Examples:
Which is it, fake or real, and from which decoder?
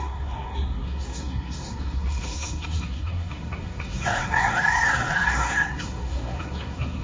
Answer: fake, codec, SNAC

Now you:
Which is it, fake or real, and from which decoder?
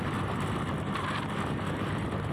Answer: real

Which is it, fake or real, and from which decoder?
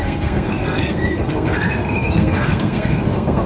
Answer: fake, codec, SNAC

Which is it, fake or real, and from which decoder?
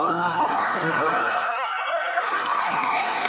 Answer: fake, codec, SNAC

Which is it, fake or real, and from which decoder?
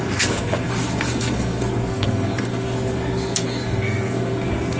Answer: fake, codec, SNAC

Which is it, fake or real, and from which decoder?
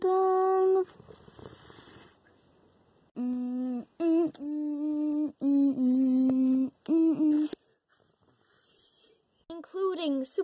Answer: real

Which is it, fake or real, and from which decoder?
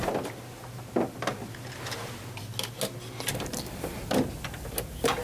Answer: real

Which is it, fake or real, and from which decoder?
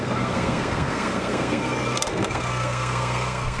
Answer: fake, codec, SNAC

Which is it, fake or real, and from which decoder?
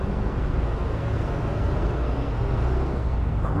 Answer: fake, codec, SNAC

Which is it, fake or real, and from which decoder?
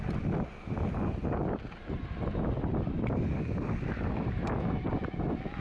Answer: real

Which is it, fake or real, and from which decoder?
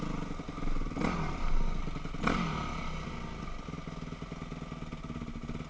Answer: real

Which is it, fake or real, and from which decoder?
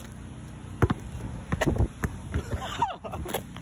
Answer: real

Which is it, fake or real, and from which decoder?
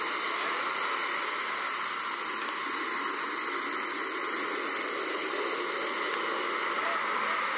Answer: real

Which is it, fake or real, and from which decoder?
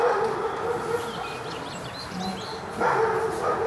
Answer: real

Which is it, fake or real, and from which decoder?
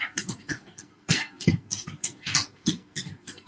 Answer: fake, codec, SNAC